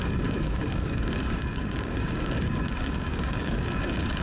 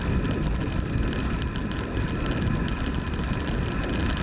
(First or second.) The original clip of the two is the second